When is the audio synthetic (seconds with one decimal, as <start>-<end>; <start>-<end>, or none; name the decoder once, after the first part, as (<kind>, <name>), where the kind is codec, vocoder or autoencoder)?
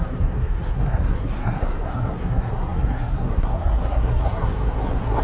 0.0-5.2 (codec, SNAC)